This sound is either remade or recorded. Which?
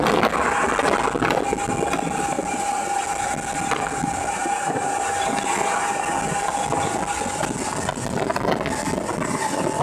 recorded